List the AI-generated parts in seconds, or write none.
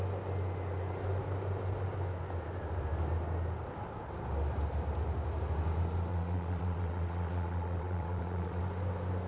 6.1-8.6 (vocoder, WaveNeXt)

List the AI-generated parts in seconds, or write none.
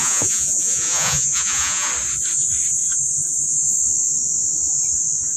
0.0-1.9 (vocoder, Vocos)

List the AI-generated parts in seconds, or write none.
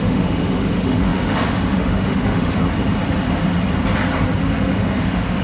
0.0-2.6 (autoencoder, DAC-VAE); 4.4-5.4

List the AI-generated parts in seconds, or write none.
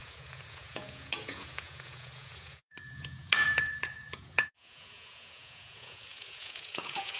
0.0-7.2 (vocoder, Vocos)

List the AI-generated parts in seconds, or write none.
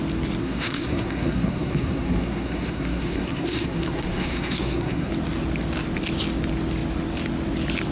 0.4-5.1 (codec, SNAC)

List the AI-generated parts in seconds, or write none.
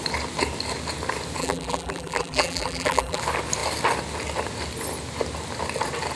1.4-3.2 (vocoder, BigVGAN v2)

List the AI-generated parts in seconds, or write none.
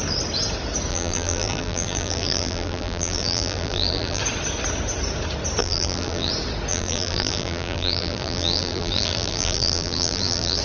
0.9-4.2 (vocoder, BigVGAN v2); 5.6-6.3; 6.7-10.6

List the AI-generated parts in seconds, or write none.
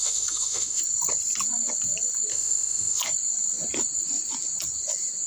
0.0-0.8 (autoencoder, DAC-VAE); 2.3-3.0